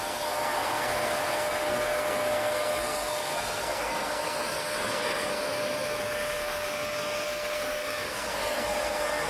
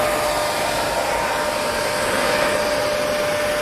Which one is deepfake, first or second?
first